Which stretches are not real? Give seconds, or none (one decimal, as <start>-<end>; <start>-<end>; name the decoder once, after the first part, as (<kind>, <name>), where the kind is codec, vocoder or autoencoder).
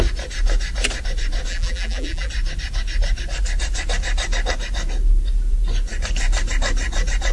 1.5-2.3 (vocoder, BigVGAN v2)